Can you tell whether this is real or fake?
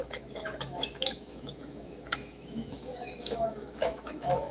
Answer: fake